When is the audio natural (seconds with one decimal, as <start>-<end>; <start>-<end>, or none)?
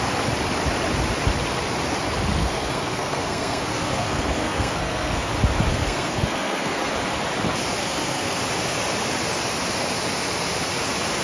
0.0-2.4; 5.3-5.7; 6.9-7.8; 8.4-11.2